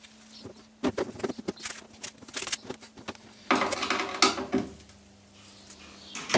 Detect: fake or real real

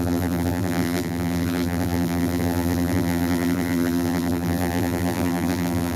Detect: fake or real fake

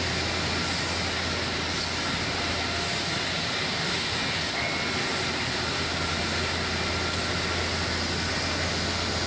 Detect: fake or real real